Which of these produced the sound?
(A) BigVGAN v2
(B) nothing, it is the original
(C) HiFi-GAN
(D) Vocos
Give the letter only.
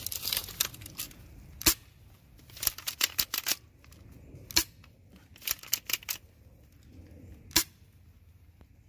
B